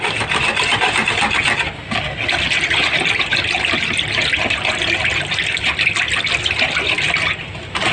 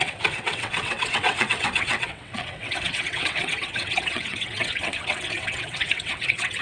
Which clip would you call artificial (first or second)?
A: second